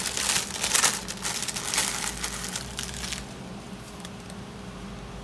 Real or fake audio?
real